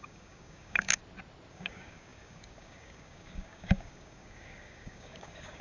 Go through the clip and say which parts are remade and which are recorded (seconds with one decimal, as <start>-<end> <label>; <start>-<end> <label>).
0.0-1.0 remade; 1.0-1.5 recorded; 1.5-5.6 remade